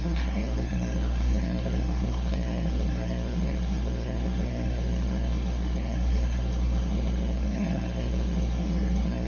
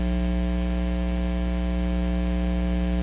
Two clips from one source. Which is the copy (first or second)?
first